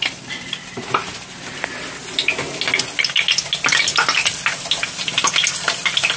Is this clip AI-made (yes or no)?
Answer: no